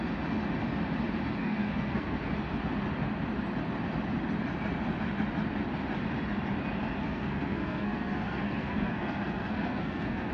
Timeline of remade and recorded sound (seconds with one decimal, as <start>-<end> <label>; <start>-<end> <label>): 0.0-1.4 recorded; 1.4-2.3 remade; 2.3-7.0 recorded; 7.0-10.3 remade